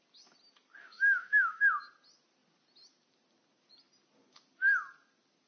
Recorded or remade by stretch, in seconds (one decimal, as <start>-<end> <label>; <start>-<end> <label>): 0.0-0.8 recorded; 0.8-1.7 remade; 1.7-5.5 recorded